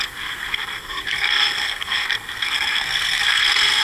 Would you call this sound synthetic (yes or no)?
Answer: yes